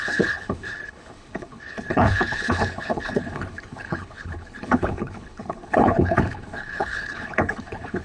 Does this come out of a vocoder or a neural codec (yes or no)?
yes